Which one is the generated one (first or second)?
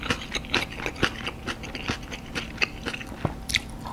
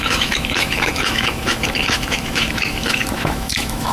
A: second